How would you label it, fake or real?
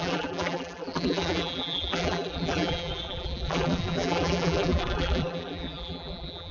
fake